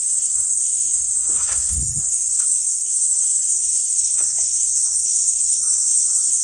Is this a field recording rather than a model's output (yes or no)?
no